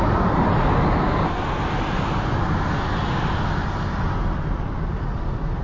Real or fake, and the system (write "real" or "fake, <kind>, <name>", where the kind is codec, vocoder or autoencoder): real